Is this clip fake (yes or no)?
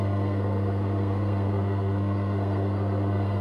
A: yes